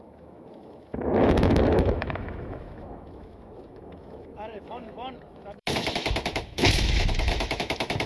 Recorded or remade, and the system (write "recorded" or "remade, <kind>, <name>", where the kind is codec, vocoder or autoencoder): remade, autoencoder, DAC-VAE